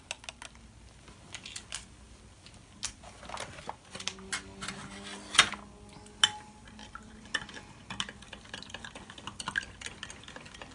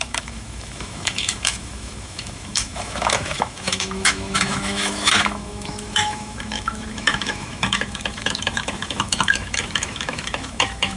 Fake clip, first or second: second